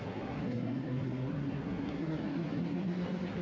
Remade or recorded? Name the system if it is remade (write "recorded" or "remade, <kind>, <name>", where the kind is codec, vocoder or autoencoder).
remade, codec, SNAC